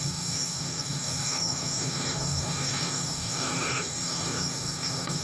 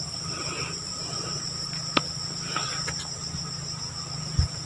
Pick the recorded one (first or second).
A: second